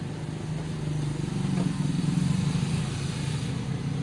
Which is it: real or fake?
real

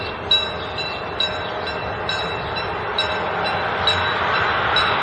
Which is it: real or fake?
real